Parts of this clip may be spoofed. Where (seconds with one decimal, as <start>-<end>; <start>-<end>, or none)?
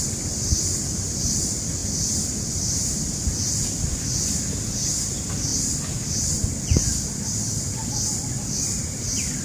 0.0-5.5; 7.9-9.4